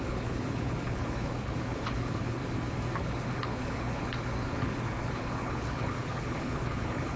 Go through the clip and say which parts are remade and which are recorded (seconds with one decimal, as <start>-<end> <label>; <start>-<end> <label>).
0.0-2.4 remade; 2.4-3.0 recorded; 3.0-7.2 remade